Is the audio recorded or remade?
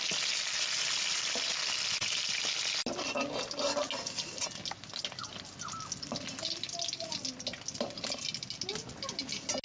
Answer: recorded